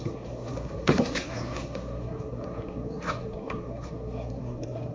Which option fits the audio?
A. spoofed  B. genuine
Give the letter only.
A